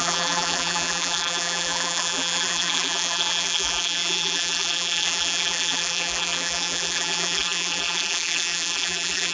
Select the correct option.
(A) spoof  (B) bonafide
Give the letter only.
A